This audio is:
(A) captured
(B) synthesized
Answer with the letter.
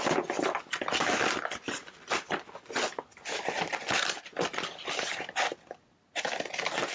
A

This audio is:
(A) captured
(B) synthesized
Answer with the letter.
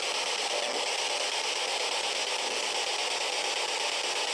A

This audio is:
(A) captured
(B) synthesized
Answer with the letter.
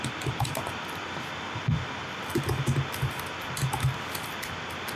A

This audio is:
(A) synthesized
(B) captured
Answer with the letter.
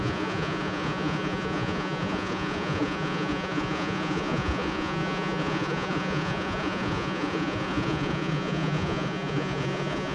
A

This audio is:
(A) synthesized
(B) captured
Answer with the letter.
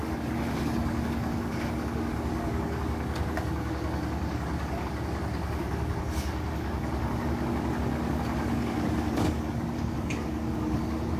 A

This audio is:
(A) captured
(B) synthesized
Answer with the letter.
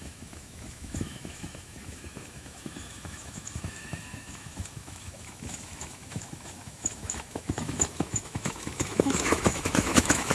B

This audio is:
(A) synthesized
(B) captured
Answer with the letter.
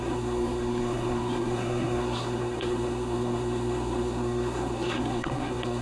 A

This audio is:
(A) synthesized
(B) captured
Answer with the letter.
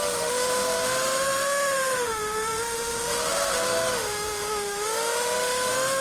A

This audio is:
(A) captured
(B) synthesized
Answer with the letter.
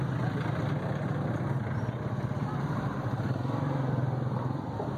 A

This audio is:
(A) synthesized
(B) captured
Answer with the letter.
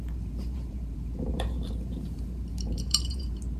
A